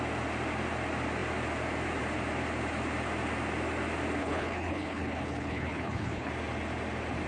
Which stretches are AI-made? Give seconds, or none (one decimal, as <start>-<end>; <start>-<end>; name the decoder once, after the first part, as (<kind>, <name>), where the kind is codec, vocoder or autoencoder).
4.2-6.3 (codec, HILCodec)